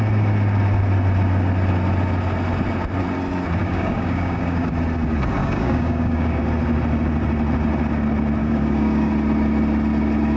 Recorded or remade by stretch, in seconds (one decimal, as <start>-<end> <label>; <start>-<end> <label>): 0.0-3.6 recorded; 3.6-4.7 remade; 4.7-5.4 recorded; 5.4-6.4 remade; 6.4-8.4 recorded; 8.4-9.1 remade; 9.1-10.4 recorded